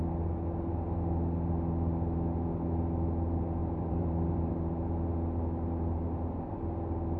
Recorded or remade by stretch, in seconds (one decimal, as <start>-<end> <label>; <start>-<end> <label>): 0.0-3.6 recorded; 3.6-4.5 remade; 4.5-7.2 recorded